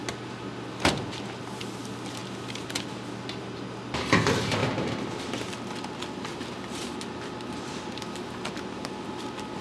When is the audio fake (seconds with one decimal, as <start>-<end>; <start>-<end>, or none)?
4.6-5.5; 6.3-6.9